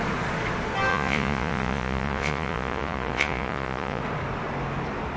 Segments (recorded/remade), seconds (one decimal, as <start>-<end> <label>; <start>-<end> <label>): 0.0-0.9 recorded; 0.9-4.0 remade; 4.0-5.2 recorded